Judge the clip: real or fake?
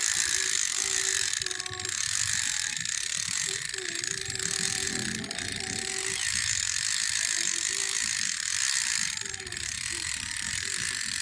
real